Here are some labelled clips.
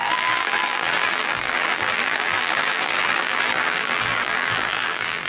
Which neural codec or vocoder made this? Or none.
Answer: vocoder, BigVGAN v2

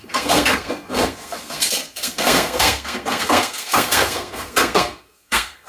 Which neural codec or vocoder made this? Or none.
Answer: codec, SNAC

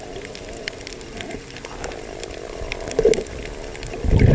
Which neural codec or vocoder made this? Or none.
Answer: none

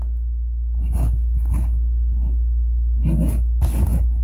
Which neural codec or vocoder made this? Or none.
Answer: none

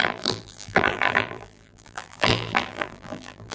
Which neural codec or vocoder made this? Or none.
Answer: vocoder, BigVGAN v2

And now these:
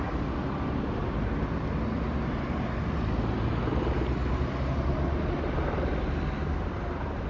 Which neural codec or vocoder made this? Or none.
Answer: none